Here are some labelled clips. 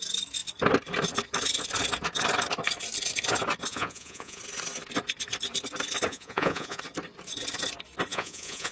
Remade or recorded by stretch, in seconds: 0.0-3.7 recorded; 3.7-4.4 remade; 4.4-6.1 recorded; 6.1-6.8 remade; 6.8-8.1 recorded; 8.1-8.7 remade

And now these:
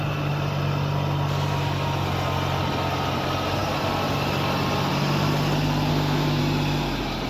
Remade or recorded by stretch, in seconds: 0.0-5.9 recorded; 5.9-6.4 remade; 6.4-7.3 recorded

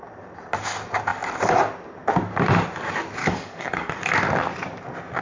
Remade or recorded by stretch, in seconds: 0.0-3.2 recorded; 3.2-3.9 remade; 3.9-5.2 recorded

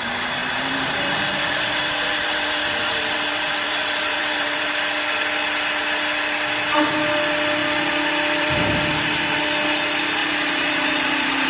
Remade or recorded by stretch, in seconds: 0.0-0.4 recorded; 0.4-4.7 remade; 4.7-7.6 recorded; 7.6-9.4 remade; 9.4-10.2 recorded; 10.2-11.5 remade

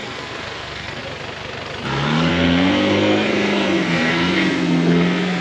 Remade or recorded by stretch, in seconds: 0.0-1.0 remade; 1.0-2.3 recorded; 2.3-5.4 remade

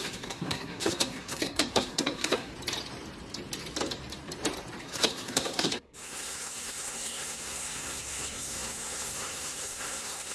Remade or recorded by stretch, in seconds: 0.0-2.5 remade; 2.5-4.8 recorded; 4.8-10.3 remade

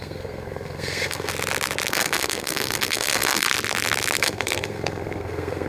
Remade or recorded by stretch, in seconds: 0.0-1.3 remade; 1.3-1.9 recorded; 1.9-3.5 remade; 3.5-4.2 recorded; 4.2-5.7 remade

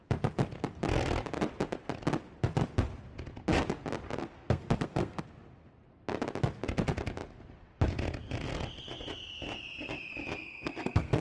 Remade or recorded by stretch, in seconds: 0.0-4.2 recorded; 4.2-5.2 remade; 5.2-10.4 recorded; 10.4-11.2 remade